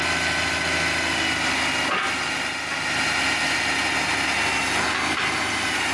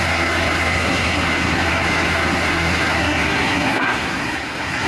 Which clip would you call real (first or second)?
first